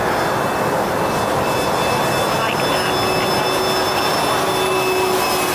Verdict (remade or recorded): recorded